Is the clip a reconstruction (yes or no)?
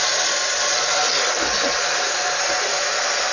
no